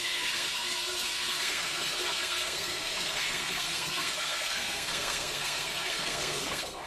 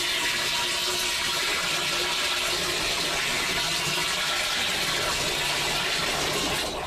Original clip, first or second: second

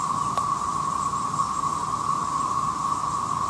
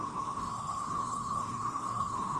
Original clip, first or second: first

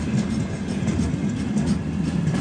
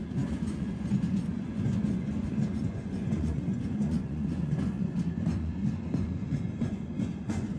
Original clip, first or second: first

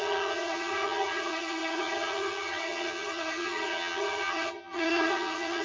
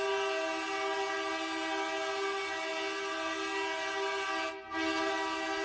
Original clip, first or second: second